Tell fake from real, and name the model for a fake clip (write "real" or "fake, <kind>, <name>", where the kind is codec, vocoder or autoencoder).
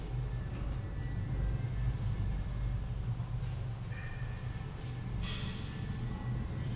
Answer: real